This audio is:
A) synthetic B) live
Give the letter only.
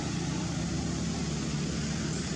B